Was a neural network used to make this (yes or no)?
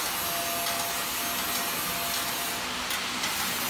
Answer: no